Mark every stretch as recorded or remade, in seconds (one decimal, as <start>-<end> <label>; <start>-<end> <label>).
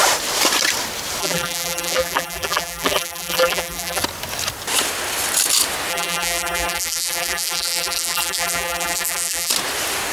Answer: 0.0-1.2 recorded; 1.2-4.0 remade; 4.0-5.9 recorded; 5.9-9.5 remade; 9.5-10.1 recorded